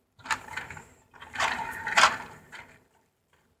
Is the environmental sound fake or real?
fake